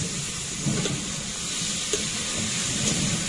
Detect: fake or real real